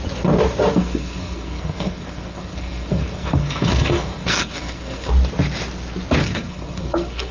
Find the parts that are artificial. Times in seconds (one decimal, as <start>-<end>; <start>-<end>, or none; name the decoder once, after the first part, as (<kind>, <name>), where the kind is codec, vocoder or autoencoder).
0.7-5.1 (codec, SNAC); 6.2-7.3